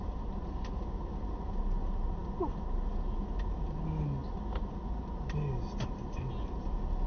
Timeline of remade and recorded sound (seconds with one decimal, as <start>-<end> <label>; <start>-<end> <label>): 0.0-7.1 recorded